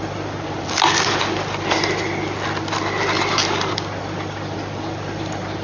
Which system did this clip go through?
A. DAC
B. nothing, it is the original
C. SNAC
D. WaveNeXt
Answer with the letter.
B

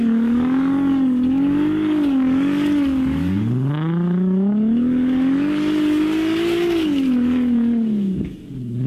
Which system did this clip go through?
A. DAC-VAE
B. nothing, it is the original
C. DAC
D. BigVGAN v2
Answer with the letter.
C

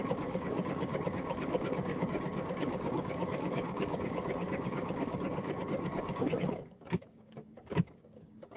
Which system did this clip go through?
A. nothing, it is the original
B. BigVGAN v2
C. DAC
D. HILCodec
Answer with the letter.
C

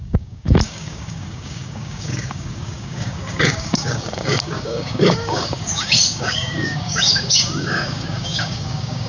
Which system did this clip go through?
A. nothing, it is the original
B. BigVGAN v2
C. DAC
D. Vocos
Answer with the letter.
C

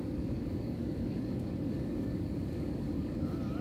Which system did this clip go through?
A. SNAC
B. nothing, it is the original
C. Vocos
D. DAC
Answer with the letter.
D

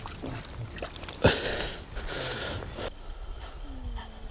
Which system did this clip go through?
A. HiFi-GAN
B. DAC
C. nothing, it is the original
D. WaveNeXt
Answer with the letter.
C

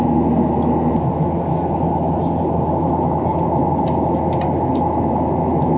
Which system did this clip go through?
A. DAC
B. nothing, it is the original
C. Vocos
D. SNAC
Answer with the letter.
B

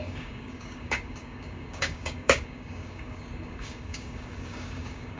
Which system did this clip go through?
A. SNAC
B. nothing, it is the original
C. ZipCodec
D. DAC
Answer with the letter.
D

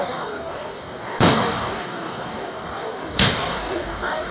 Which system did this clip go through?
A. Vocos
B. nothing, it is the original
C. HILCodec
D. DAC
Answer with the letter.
D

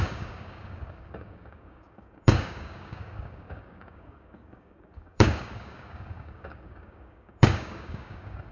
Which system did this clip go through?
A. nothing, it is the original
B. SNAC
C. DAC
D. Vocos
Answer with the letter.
C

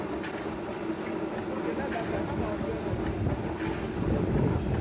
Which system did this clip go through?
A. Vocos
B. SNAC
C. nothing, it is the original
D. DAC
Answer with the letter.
C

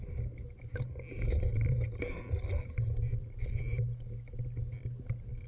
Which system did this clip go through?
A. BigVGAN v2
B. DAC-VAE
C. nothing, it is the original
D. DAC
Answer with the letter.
C